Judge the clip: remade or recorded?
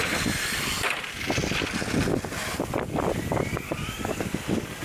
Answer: recorded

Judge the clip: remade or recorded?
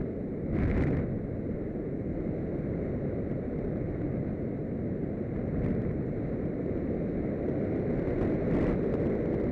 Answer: recorded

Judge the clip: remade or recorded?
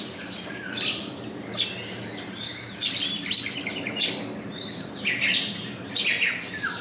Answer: recorded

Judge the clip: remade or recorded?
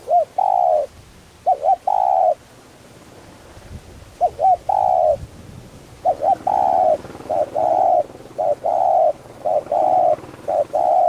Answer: recorded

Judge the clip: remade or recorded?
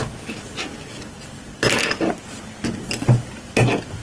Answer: recorded